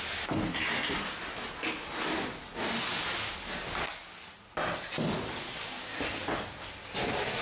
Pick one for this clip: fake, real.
real